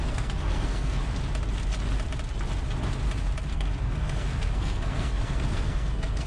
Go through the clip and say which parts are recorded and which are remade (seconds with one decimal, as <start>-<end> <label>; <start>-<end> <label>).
0.0-1.0 remade; 1.0-3.5 recorded; 3.5-6.3 remade